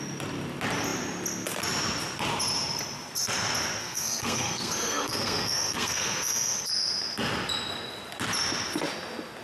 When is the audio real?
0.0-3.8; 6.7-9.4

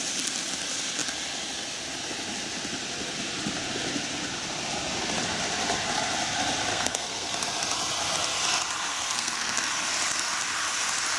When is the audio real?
0.0-6.7; 7.3-8.9; 9.6-11.2

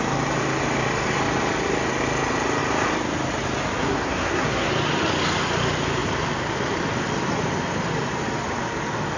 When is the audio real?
0.0-3.8; 4.7-9.2

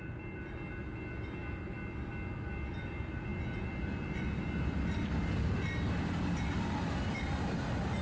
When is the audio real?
0.0-8.0

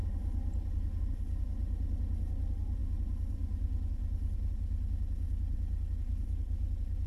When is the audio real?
0.0-7.1

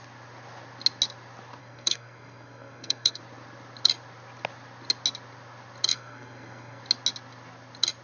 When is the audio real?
0.0-1.6; 3.2-5.9; 6.8-8.0